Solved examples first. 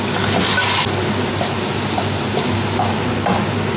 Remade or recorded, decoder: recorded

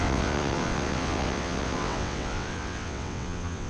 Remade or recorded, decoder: remade, vocoder, WaveNeXt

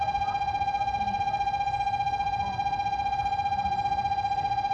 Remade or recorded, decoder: recorded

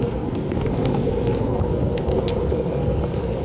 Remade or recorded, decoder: remade, codec, SNAC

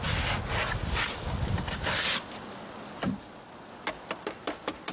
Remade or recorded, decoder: recorded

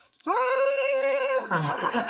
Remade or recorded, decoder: remade, codec, SNAC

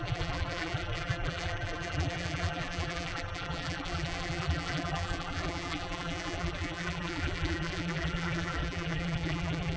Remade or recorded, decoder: remade, vocoder, BigVGAN v2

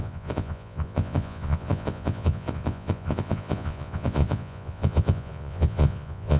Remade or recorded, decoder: remade, vocoder, Vocos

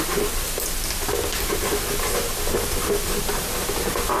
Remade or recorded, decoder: recorded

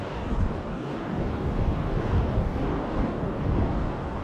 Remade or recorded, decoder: remade, codec, DAC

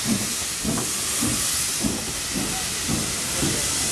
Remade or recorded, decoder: recorded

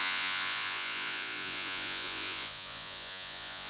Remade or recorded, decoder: remade, vocoder, Vocos